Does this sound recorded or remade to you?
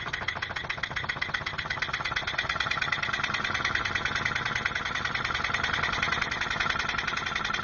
recorded